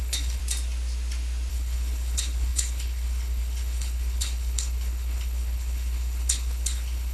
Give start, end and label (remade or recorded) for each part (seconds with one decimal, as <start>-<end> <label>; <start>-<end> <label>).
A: 0.0-0.4 remade; 0.4-1.5 recorded; 1.5-7.1 remade